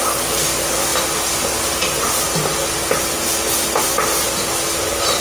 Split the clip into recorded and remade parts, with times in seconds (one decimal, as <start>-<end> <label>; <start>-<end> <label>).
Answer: 0.0-5.2 recorded